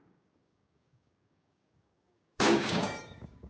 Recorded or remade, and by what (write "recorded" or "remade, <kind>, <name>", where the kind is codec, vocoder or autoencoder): remade, codec, DAC